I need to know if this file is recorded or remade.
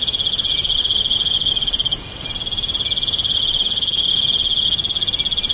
recorded